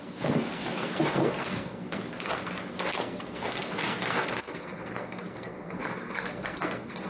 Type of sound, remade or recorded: remade